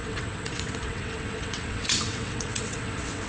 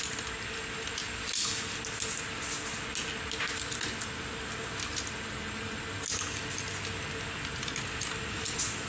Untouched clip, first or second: second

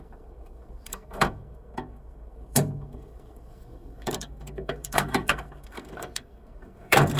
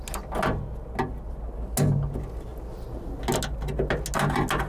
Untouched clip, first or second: second